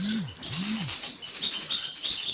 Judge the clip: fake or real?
real